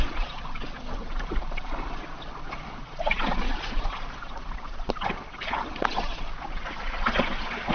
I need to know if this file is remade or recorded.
remade